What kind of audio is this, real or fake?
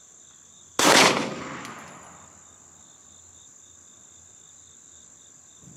real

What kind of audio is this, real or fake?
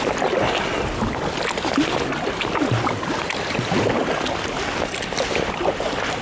real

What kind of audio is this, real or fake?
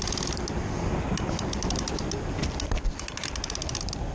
real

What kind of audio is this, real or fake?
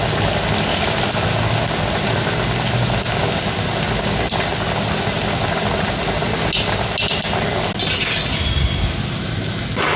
real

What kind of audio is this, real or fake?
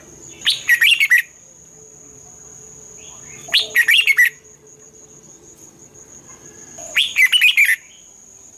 real